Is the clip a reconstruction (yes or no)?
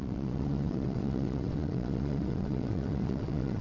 yes